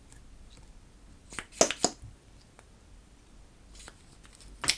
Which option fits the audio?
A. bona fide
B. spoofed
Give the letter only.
A